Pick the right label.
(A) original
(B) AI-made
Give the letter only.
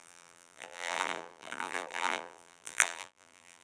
B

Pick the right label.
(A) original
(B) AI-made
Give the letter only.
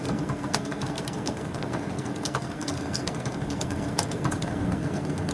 B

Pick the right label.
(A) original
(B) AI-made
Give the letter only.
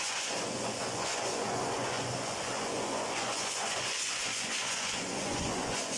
B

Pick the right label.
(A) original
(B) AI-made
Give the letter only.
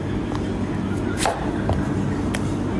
A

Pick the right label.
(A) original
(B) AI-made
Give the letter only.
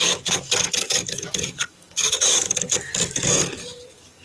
B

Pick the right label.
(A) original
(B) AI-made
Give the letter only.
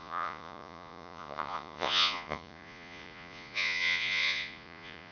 B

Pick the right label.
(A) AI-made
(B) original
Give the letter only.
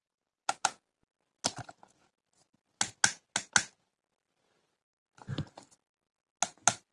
B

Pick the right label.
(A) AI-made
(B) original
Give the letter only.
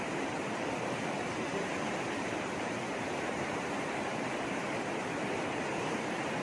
A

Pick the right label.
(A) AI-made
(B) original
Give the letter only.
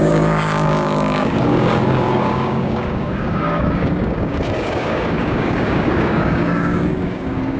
A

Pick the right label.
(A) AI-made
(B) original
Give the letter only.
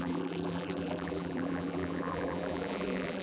A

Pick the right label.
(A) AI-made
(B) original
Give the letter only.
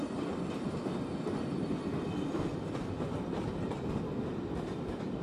B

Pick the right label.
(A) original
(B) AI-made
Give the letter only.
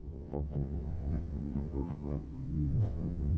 B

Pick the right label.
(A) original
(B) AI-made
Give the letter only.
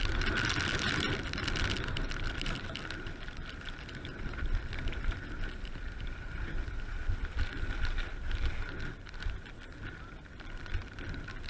A